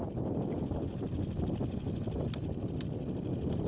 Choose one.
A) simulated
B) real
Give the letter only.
B